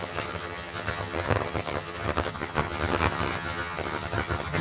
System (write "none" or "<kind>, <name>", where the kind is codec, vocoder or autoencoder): vocoder, HiFi-GAN